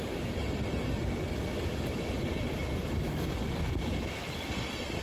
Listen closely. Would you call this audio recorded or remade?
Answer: recorded